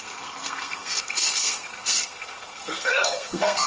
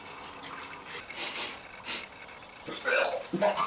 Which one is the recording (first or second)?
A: second